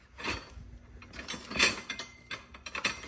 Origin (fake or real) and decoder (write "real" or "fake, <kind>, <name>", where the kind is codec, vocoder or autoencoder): real